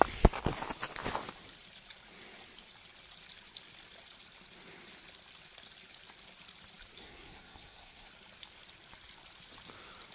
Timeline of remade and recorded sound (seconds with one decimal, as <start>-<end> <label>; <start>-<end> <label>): 0.0-7.0 recorded; 7.0-8.1 remade; 8.1-10.1 recorded